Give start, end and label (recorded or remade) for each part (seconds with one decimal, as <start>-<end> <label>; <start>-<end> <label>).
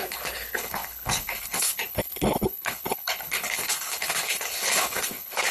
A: 0.0-5.5 remade